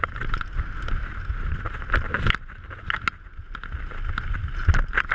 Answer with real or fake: real